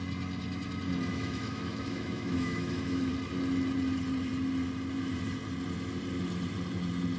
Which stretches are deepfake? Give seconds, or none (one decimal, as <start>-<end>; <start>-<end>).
1.1-3.1

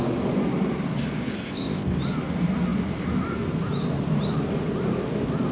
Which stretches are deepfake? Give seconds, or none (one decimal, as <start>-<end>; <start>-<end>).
1.3-2.0